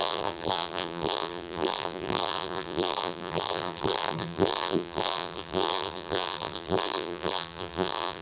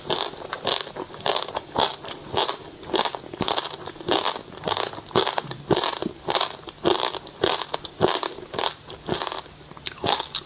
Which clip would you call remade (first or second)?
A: first